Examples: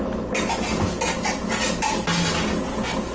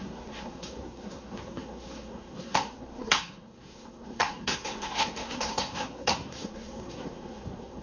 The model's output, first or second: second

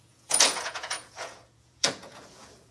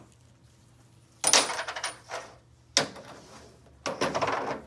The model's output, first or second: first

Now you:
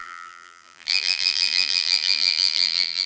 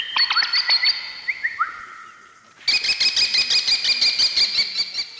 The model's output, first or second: first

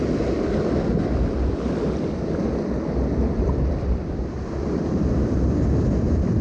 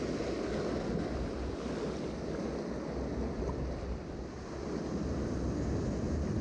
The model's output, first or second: first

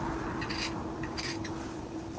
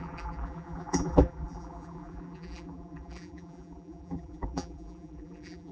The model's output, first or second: second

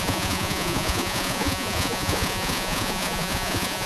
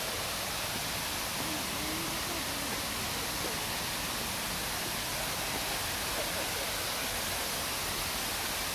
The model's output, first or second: first